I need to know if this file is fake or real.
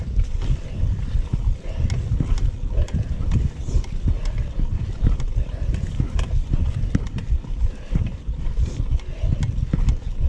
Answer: real